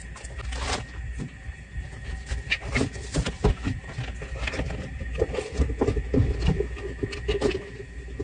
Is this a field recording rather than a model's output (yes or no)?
yes